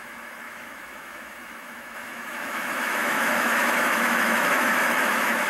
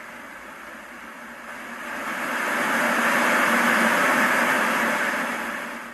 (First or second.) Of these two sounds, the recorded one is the second